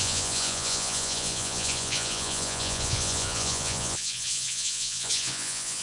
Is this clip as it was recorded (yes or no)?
no